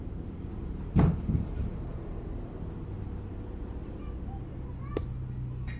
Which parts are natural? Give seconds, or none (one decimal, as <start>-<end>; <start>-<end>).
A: 1.9-5.8